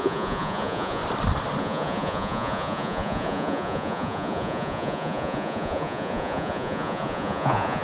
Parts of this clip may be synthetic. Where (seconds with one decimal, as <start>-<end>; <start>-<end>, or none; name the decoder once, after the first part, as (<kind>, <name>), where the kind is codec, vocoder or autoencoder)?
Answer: 0.0-1.0 (vocoder, Vocos); 1.6-7.8